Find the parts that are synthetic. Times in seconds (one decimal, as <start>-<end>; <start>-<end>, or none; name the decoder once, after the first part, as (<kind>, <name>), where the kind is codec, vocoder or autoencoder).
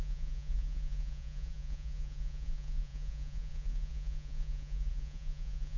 0.0-5.8 (vocoder, Vocos)